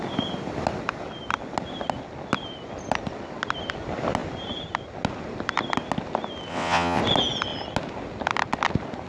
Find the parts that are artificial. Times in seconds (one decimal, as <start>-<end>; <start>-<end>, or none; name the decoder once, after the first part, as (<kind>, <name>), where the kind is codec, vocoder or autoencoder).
6.5-7.0 (vocoder, WaveNeXt)

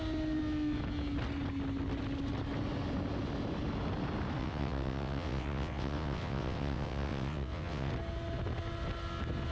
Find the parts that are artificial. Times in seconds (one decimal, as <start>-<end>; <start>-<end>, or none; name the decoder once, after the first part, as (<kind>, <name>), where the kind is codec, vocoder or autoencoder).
4.4-7.9 (vocoder, WaveNeXt)

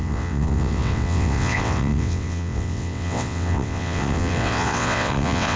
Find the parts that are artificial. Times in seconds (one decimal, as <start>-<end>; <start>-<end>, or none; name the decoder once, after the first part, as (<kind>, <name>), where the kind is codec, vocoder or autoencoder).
0.0-5.6 (vocoder, WaveNeXt)

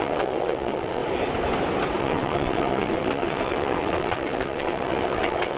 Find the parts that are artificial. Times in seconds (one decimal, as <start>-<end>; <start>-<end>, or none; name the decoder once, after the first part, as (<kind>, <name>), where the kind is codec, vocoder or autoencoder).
0.0-1.0 (vocoder, WaveNeXt); 2.0-5.6

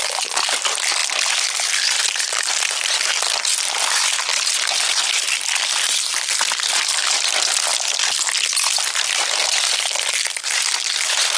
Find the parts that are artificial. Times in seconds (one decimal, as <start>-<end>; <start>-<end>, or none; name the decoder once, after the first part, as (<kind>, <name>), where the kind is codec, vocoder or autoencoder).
none

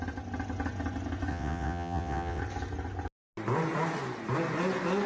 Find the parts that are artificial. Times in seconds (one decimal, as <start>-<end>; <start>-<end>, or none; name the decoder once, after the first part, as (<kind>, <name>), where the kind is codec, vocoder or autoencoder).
1.3-2.4 (vocoder, WaveNeXt)

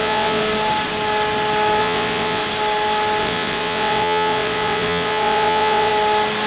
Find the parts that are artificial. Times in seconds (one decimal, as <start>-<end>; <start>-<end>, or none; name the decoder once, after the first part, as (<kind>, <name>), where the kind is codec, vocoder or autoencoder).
0.0-0.4 (vocoder, WaveNeXt); 1.8-2.4; 3.2-5.9